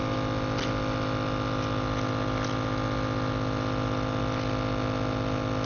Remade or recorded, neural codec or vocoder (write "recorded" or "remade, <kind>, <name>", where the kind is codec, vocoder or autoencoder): recorded